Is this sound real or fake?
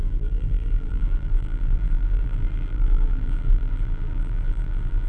fake